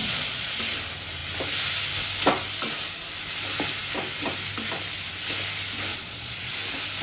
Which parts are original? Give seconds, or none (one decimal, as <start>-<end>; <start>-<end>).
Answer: 0.6-5.9; 6.5-7.0